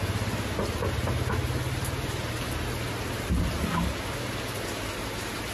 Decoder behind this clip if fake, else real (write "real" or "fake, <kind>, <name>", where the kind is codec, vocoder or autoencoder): real